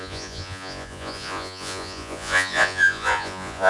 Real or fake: fake